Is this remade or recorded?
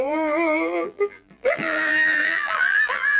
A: remade